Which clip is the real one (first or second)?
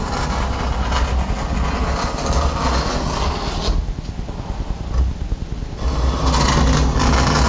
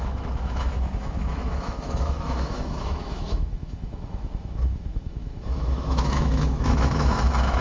first